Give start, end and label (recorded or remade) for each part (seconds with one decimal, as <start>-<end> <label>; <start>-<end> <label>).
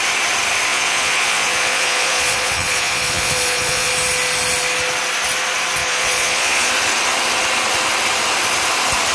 0.0-0.7 recorded; 0.7-3.9 remade; 3.9-5.8 recorded; 5.8-6.7 remade; 6.7-9.1 recorded